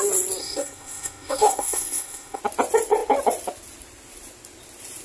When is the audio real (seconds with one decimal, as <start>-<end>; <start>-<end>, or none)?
0.0-0.4; 2.4-5.0